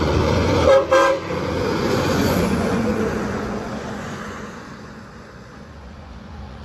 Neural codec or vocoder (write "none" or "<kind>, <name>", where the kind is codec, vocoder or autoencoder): vocoder, Vocos